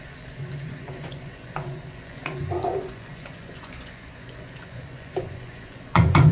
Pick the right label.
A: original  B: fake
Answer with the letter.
B